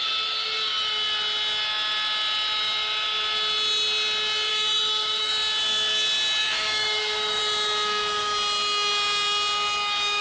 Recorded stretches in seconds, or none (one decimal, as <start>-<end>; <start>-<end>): 0.0-4.5; 5.3-6.4; 7.4-10.2